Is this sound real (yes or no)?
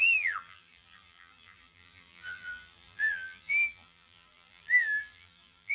no